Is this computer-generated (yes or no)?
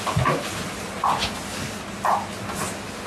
no